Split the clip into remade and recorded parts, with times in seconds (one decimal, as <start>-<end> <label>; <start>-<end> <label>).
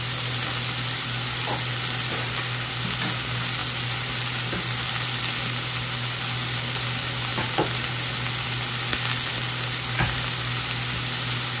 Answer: 0.0-11.6 recorded